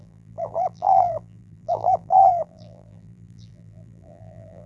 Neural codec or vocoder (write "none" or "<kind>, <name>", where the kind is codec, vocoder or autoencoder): vocoder, BigVGAN v2